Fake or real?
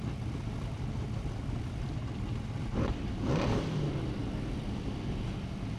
real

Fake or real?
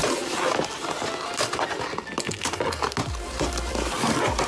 real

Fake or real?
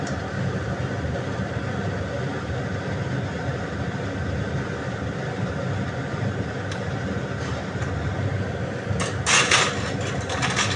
real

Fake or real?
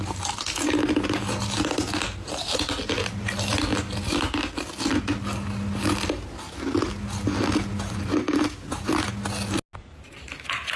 real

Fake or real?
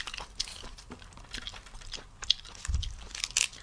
real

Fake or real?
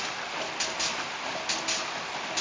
real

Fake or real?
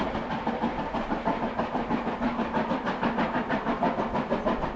real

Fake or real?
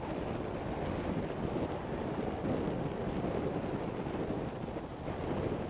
real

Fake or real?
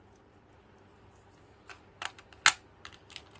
real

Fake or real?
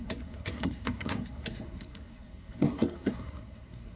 fake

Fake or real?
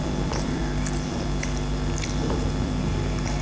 fake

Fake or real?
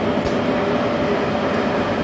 real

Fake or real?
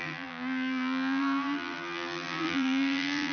fake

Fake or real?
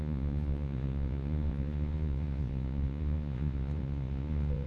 fake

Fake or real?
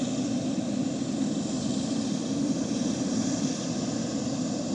fake